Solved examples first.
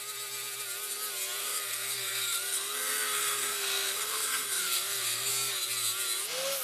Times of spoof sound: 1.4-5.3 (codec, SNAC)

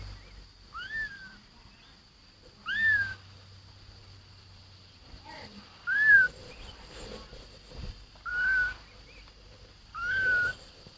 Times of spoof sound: none

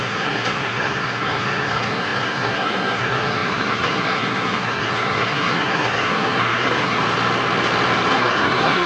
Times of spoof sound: 0.0-7.0 (codec, SNAC); 8.1-8.9

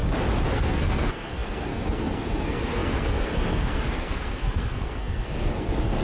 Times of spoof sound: 0.5-6.0 (codec, SNAC)

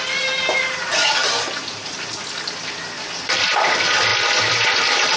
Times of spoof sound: none

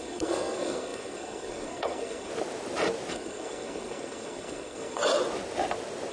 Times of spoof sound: 0.0-2.3 (codec, SNAC); 3.1-5.0

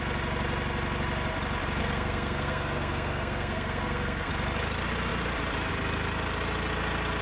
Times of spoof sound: 1.8-4.3 (codec, SNAC)